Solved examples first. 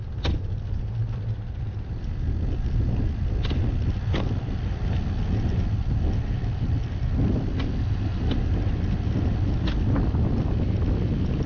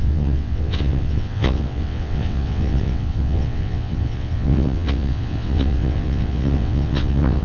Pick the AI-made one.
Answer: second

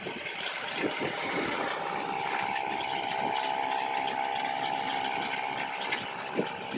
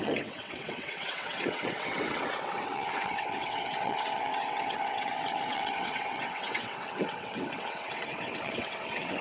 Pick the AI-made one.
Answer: second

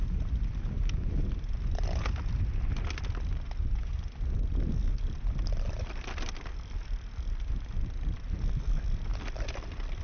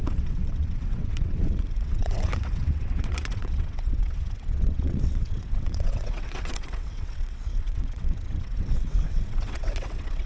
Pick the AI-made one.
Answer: second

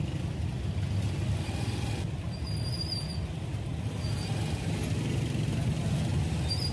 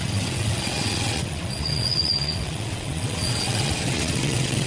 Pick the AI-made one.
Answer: second